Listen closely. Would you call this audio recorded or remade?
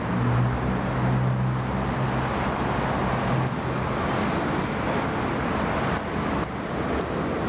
recorded